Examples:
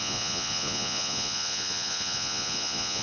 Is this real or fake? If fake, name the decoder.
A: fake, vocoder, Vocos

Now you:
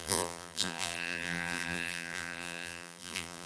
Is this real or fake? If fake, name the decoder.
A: fake, vocoder, BigVGAN v2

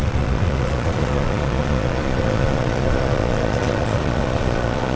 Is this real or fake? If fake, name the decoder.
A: fake, vocoder, Vocos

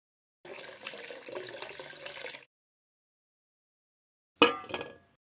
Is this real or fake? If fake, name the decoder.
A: real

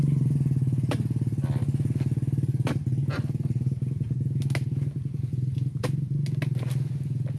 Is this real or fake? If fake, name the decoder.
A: real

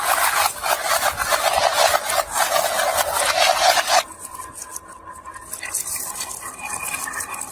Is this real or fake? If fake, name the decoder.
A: real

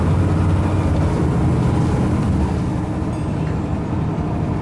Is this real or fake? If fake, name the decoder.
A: real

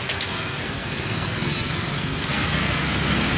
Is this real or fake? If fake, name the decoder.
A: fake, codec, SNAC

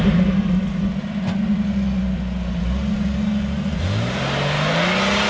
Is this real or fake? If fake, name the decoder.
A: real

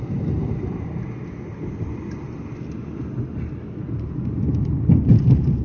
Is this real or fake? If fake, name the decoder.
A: real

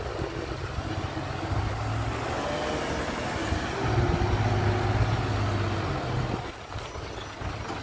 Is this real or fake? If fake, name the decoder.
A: real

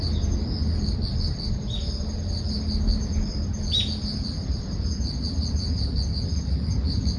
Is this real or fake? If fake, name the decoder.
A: real